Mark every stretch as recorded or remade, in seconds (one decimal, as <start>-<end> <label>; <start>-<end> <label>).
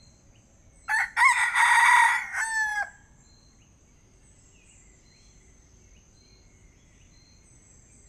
0.0-8.1 recorded